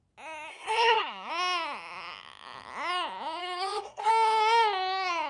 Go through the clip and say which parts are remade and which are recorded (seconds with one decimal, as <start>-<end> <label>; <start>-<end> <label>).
0.0-0.5 recorded; 0.5-1.3 remade; 1.3-3.4 recorded; 3.4-4.1 remade; 4.1-5.3 recorded